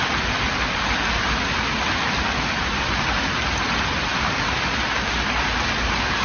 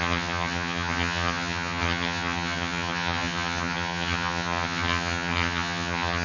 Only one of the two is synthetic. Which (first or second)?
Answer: second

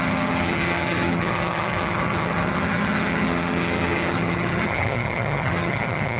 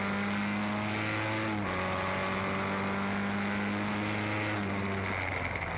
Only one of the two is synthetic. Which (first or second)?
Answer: first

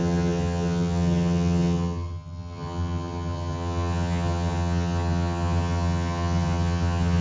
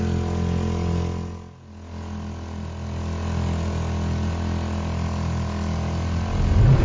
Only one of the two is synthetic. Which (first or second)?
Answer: first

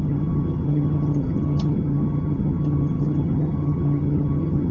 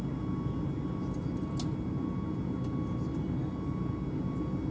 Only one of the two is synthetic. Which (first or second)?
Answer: first